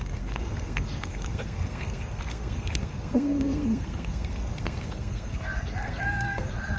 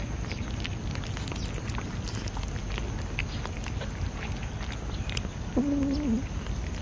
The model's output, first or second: first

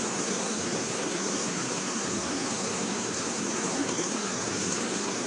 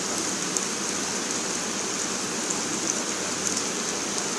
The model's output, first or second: first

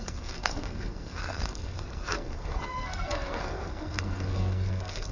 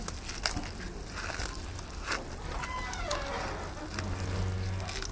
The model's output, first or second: first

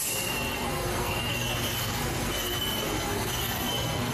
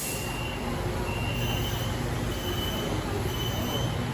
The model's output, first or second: first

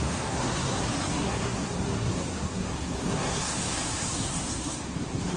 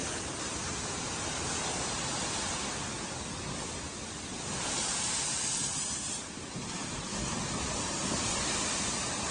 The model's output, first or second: first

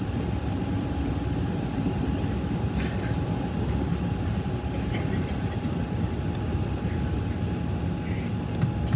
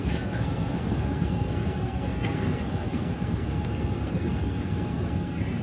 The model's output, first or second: second